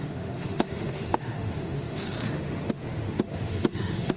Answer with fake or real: fake